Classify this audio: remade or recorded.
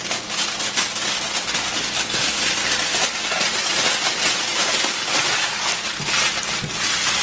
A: recorded